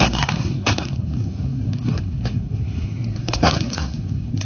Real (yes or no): no